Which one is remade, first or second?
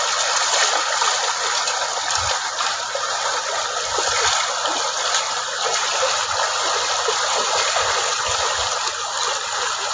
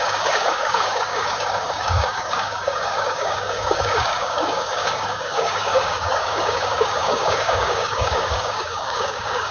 second